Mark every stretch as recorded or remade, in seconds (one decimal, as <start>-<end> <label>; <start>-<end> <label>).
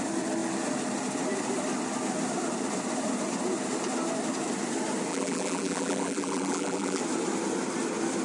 0.0-5.1 recorded; 5.1-7.0 remade; 7.0-8.2 recorded